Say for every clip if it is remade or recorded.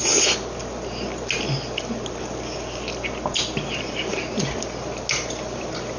recorded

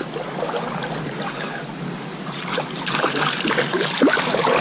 recorded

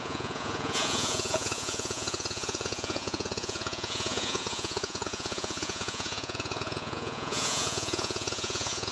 remade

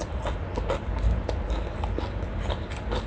recorded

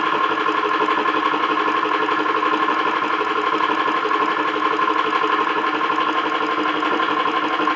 recorded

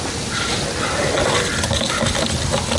recorded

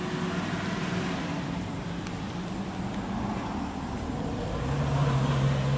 recorded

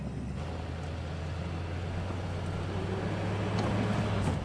recorded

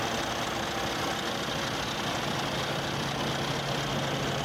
recorded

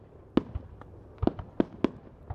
recorded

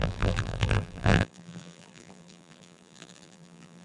remade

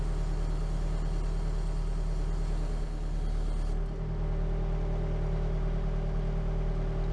recorded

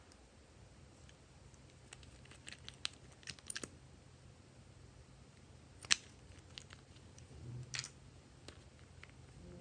recorded